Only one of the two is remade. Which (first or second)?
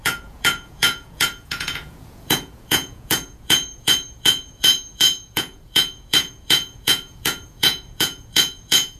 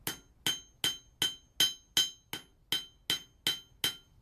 first